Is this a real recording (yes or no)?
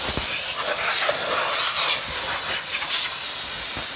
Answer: yes